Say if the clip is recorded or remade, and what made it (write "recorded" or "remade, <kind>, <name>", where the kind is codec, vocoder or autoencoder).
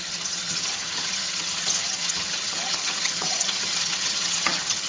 remade, vocoder, HiFi-GAN